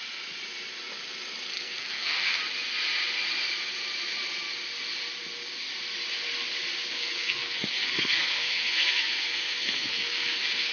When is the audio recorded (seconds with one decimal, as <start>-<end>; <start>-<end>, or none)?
0.0-1.5; 2.4-6.9